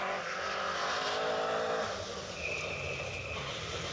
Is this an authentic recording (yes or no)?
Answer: yes